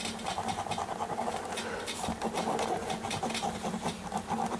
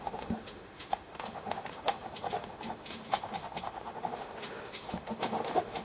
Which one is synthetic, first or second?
second